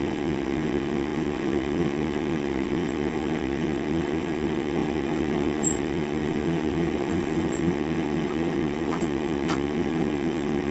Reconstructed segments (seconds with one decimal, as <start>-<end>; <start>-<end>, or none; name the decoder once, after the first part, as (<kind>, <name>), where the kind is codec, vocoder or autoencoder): 0.0-10.7 (vocoder, WaveNeXt)